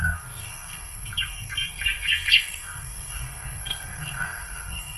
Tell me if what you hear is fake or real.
fake